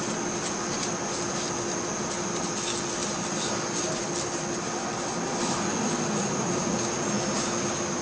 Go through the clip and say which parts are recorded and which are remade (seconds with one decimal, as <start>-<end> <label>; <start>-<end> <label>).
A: 0.0-8.0 recorded